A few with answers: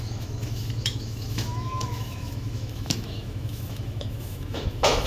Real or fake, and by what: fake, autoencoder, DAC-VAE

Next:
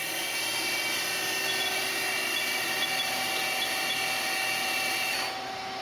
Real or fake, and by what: real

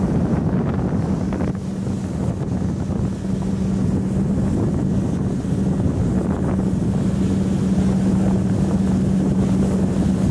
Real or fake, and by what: real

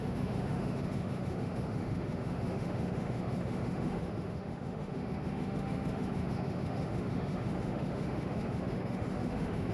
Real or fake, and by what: fake, autoencoder, DAC-VAE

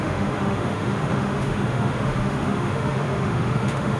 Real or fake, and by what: fake, autoencoder, DAC-VAE